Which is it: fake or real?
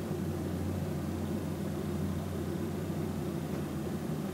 fake